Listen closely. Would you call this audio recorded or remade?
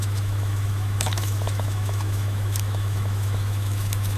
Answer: remade